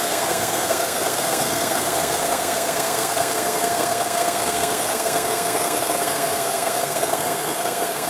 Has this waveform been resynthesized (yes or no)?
yes